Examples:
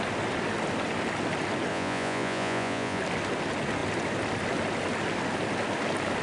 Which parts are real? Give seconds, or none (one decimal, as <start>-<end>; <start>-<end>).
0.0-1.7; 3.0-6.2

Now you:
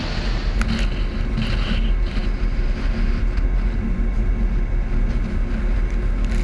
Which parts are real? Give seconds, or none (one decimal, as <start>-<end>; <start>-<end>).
0.0-6.4

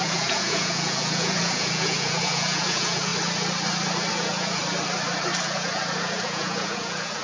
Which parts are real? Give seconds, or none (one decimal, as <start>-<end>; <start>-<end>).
3.1-4.1; 4.6-5.4

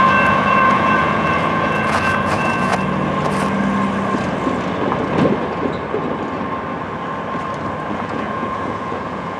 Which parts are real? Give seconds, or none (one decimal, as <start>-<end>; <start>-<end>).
2.7-7.9

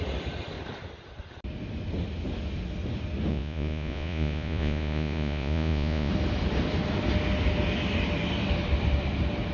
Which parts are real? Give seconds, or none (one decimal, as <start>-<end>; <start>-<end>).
0.0-3.3; 6.1-9.5

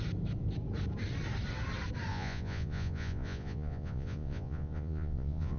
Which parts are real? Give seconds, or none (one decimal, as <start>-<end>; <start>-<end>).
0.0-2.1

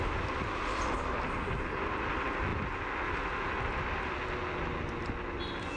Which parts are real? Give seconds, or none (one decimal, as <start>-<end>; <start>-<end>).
0.0-5.8

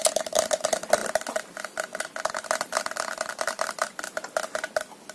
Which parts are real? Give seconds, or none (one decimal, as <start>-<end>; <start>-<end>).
0.0-5.1